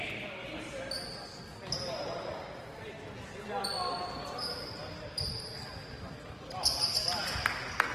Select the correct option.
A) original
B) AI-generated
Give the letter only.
A